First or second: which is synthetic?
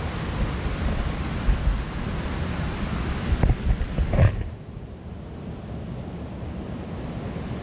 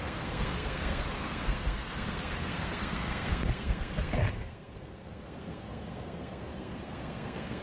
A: second